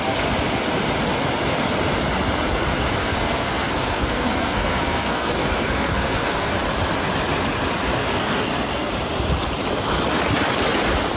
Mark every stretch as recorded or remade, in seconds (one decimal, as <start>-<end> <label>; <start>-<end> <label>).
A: 0.0-3.0 recorded; 3.0-6.5 remade; 6.5-8.0 recorded; 8.0-8.9 remade; 8.9-11.2 recorded